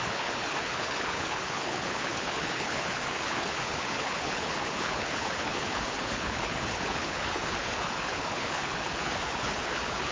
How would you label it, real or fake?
fake